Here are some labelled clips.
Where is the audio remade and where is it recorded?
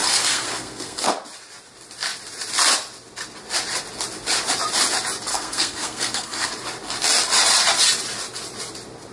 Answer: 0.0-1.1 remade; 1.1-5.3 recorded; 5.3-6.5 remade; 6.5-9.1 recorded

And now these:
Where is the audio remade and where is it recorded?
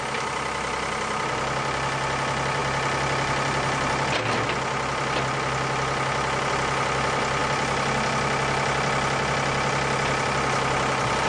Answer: 0.0-11.3 recorded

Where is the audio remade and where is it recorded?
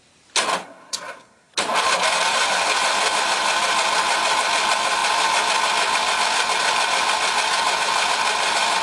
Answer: 0.0-0.6 recorded; 0.6-1.5 remade; 1.5-8.8 recorded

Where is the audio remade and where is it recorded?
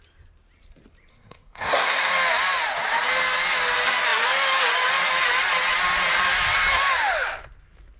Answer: 0.0-1.1 recorded; 1.1-2.1 remade; 2.1-8.0 recorded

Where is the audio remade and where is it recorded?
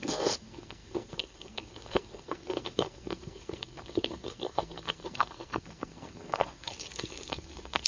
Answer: 0.0-7.9 remade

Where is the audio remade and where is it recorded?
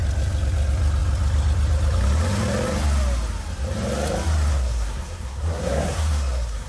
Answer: 0.0-4.5 recorded; 4.5-6.7 remade